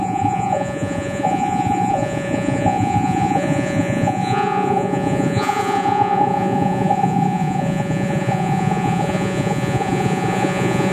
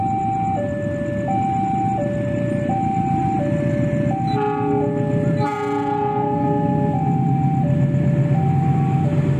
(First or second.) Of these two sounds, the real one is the second